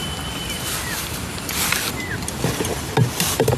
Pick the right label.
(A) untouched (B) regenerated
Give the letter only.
A